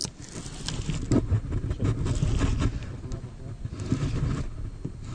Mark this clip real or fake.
real